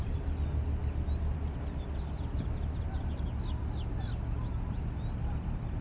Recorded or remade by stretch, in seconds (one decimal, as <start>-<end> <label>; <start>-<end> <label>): 0.0-5.8 recorded